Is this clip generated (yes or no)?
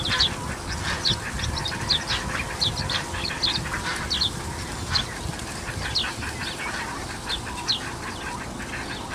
no